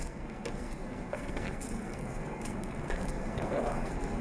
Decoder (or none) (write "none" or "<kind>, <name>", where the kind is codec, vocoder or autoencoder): codec, SNAC